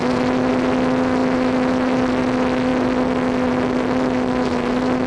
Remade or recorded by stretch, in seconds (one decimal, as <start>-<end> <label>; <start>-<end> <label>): 0.0-5.1 recorded